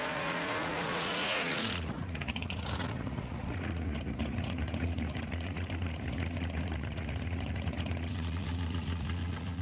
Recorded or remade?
remade